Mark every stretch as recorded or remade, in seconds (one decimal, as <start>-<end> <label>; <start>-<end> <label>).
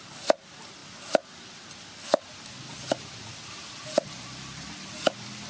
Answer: 0.0-0.8 remade; 0.8-3.2 recorded; 3.2-5.5 remade